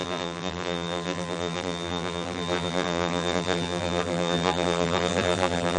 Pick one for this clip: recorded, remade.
remade